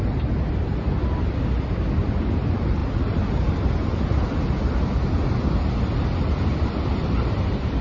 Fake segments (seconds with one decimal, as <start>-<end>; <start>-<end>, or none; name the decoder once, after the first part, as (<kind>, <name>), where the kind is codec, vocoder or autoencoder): none